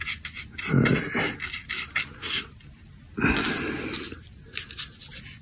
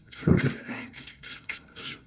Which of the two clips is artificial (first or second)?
second